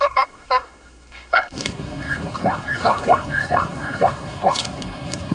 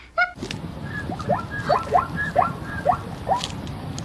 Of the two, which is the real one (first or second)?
second